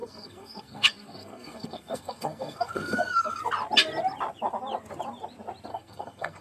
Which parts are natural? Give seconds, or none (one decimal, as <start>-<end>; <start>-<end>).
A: 3.4-5.7